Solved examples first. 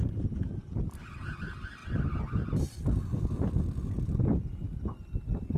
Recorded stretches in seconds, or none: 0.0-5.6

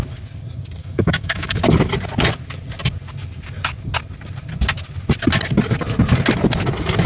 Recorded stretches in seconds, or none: 0.0-0.8; 1.6-7.1

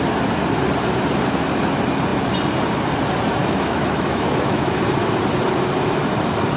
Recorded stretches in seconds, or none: 0.0-3.4; 4.8-6.6

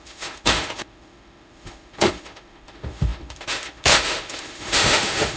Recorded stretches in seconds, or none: none

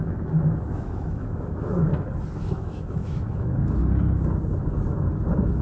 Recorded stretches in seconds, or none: 1.9-2.4; 3.8-5.6

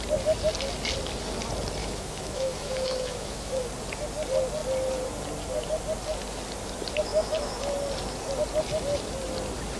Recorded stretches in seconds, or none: 0.0-1.8; 3.7-7.1; 7.7-9.8

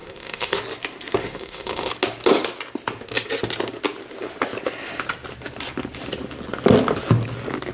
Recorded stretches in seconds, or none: 0.6-1.2; 1.9-7.7